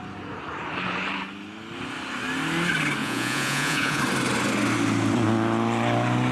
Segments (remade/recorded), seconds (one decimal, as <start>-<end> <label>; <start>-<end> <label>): 0.0-3.0 recorded; 3.0-4.0 remade; 4.0-6.3 recorded